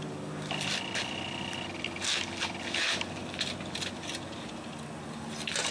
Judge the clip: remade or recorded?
recorded